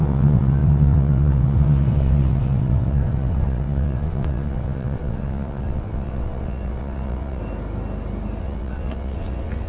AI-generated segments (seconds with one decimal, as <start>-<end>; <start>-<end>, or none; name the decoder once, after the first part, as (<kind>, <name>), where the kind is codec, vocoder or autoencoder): 0.0-7.4 (vocoder, WaveNeXt); 8.4-9.7